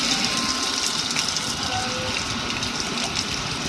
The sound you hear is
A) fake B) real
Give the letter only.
B